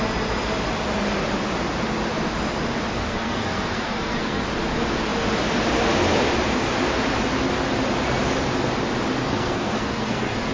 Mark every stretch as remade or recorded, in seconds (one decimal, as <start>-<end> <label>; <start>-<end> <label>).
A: 0.0-3.0 recorded; 3.0-4.4 remade; 4.4-9.2 recorded; 9.2-10.5 remade